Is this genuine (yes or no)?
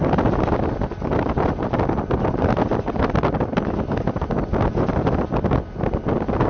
yes